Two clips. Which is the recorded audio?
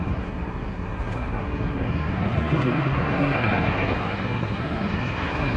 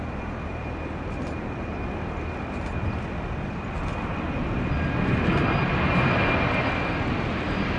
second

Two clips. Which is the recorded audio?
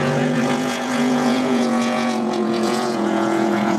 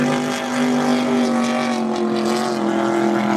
second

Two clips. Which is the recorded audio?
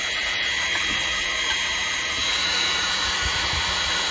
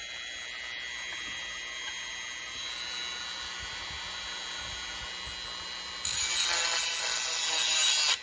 second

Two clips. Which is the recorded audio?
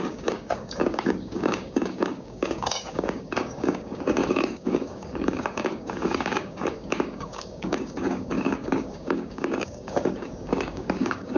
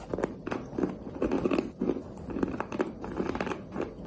second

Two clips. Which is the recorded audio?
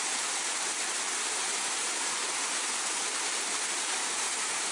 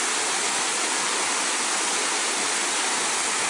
second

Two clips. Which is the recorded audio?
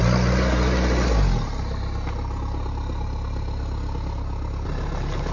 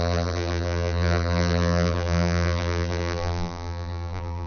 first